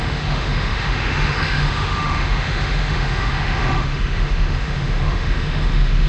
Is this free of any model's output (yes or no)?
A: no